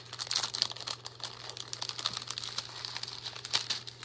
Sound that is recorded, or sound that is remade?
recorded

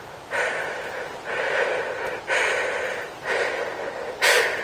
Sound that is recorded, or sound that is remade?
recorded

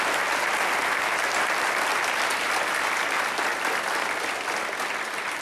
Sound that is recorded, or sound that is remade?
recorded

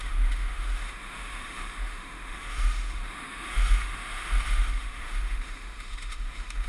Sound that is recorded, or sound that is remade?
remade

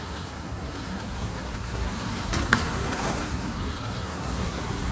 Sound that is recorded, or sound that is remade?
remade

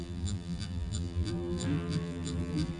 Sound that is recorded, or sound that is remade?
remade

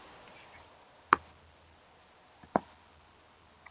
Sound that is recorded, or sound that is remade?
recorded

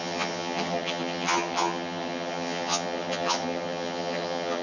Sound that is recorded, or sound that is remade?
remade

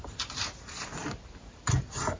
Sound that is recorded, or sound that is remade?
remade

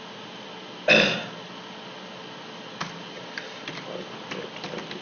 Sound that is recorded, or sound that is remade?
recorded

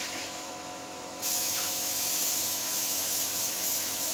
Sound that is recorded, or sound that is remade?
remade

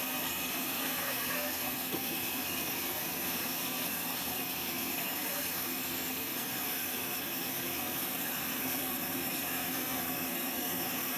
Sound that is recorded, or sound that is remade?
remade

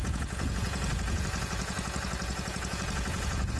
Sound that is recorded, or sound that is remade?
remade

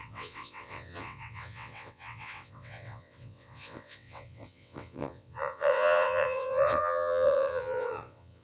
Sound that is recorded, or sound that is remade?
remade